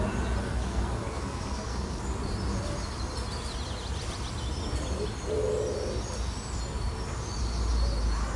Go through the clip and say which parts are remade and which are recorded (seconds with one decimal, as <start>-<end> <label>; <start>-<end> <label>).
0.0-0.4 recorded; 0.4-2.0 remade; 2.0-8.4 recorded

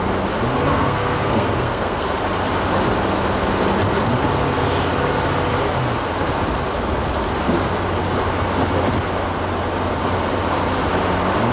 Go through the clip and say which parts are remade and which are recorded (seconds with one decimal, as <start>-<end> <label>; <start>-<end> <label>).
0.0-0.7 recorded; 0.7-2.1 remade; 2.1-11.5 recorded

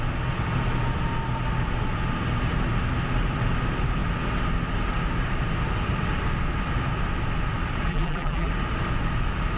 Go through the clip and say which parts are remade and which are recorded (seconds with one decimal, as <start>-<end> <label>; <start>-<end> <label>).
0.0-7.9 recorded; 7.9-8.5 remade; 8.5-9.6 recorded

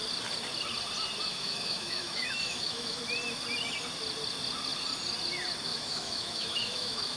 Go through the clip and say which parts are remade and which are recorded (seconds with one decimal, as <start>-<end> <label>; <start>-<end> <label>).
0.0-1.3 recorded; 1.3-3.0 remade; 3.0-5.7 recorded; 5.7-7.2 remade

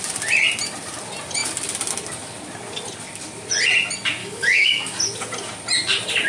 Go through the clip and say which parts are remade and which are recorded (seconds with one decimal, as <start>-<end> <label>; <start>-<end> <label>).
0.0-4.2 recorded; 4.2-5.0 remade; 5.0-6.3 recorded

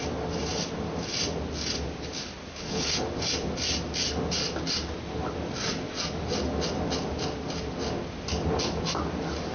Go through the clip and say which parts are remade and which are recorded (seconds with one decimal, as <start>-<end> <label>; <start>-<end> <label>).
0.0-2.5 recorded; 2.5-3.0 remade; 3.0-9.5 recorded